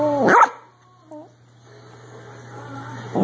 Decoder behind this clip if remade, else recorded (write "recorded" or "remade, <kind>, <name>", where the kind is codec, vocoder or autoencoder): recorded